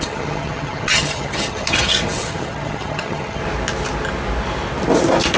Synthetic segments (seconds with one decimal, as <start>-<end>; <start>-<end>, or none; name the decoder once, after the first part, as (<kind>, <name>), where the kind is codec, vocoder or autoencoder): 0.0-3.4 (vocoder, HiFi-GAN)